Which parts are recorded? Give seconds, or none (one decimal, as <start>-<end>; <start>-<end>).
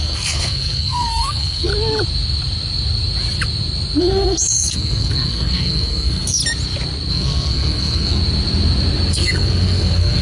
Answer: 1.7-4.0; 6.4-7.1; 8.2-9.1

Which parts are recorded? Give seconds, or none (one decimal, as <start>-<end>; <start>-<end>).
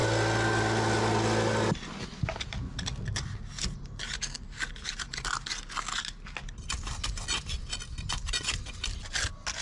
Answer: 0.0-9.6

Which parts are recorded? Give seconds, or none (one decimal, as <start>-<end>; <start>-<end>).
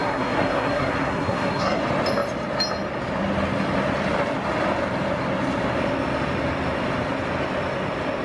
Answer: 1.8-8.2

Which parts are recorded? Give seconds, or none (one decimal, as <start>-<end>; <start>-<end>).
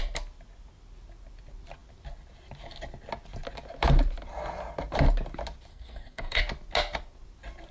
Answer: 0.0-5.7; 6.4-7.7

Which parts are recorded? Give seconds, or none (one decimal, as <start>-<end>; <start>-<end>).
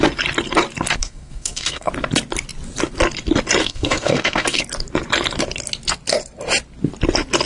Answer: 0.0-1.0; 1.9-3.6; 4.6-7.5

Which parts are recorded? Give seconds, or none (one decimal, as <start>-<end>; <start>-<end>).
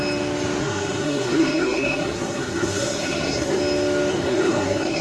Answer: 0.0-0.6; 3.6-4.1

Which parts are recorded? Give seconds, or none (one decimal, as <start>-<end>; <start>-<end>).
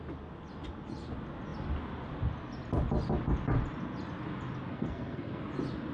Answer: 0.0-4.7; 5.4-5.9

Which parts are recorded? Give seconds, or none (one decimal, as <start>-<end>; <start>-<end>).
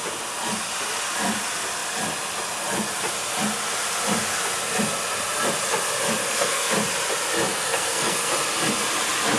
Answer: 0.0-6.2; 6.7-7.5; 8.3-9.4